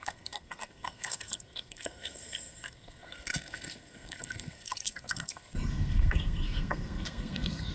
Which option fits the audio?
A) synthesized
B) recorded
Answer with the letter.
A